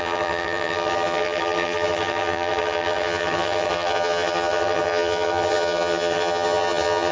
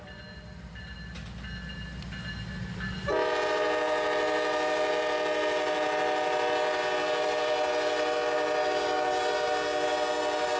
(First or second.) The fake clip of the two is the first